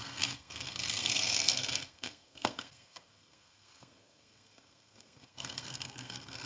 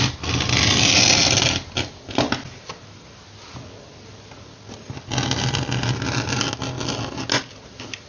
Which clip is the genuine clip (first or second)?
second